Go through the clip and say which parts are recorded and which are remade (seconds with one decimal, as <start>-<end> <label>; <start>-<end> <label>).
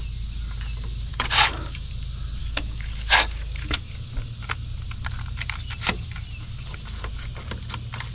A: 0.0-1.1 recorded; 1.1-1.9 remade; 1.9-2.4 recorded; 2.4-3.9 remade; 3.9-8.1 recorded